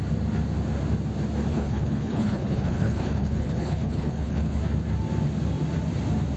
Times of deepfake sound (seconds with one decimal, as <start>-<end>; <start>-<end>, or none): 1.5-4.6